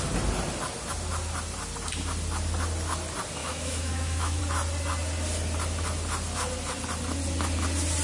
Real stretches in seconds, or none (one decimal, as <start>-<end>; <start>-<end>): 0.0-3.4; 4.4-8.0